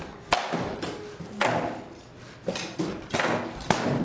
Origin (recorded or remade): recorded